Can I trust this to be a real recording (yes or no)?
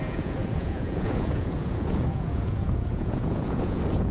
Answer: no